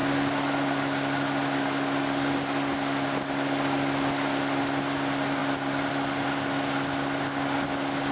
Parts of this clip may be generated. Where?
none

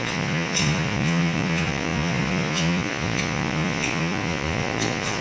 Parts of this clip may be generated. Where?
0.0-5.2 (vocoder, Vocos)

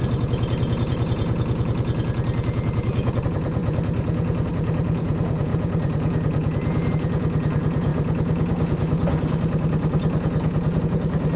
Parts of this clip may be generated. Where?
0.0-11.4 (vocoder, Vocos)

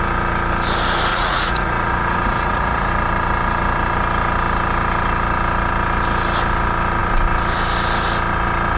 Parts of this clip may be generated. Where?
1.1-2.9 (vocoder, Vocos)

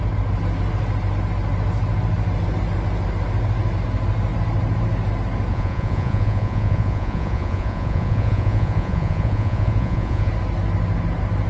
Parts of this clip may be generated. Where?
5.5-10.3 (vocoder, Vocos)